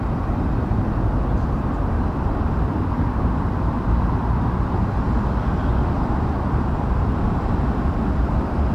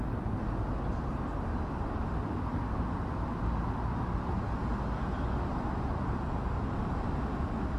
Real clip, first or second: second